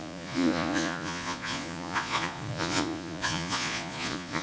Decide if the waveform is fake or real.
fake